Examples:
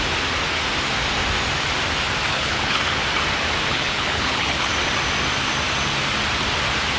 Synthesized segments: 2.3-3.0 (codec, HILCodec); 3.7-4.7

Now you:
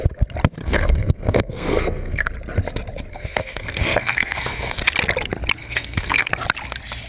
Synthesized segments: 0.6-2.3 (codec, SNAC); 3.1-4.8; 5.6-6.3

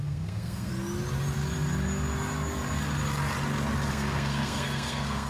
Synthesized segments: 0.0-0.7 (codec, SNAC); 3.9-5.3

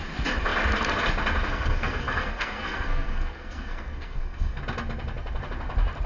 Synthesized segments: 1.5-4.6 (codec, SNAC)